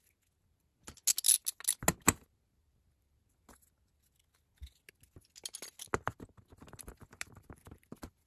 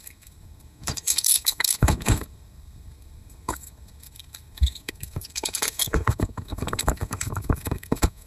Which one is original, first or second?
first